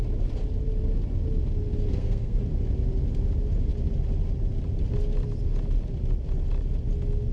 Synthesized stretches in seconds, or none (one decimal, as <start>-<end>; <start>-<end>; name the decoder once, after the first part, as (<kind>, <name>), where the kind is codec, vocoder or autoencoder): 1.9-2.4 (codec, SNAC)